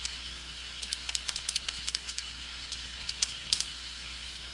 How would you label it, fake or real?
fake